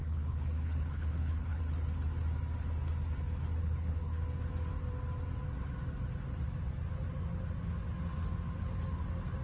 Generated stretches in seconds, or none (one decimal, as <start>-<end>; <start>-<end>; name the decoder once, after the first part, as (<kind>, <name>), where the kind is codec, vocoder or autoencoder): 0.0-1.6 (codec, HILCodec); 3.6-4.2